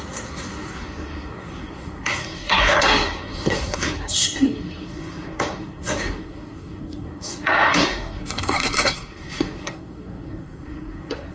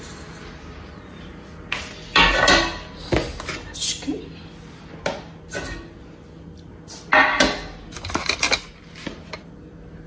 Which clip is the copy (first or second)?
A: first